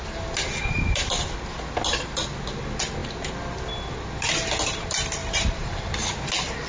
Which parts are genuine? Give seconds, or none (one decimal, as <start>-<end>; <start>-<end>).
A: 0.0-5.2; 5.8-6.7